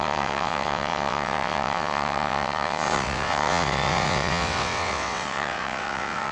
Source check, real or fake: fake